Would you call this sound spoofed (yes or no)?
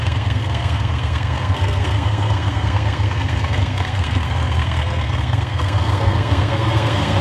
yes